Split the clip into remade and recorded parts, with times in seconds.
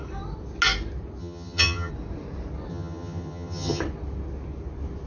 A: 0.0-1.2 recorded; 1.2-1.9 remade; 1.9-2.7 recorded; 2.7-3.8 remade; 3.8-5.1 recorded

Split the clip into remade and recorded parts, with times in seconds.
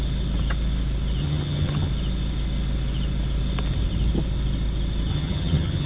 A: 0.0-1.2 recorded; 1.2-1.9 remade; 1.9-5.1 recorded; 5.1-5.9 remade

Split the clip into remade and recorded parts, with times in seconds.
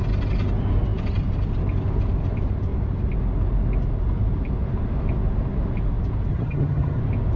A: 0.0-6.3 recorded; 6.3-7.0 remade; 7.0-7.4 recorded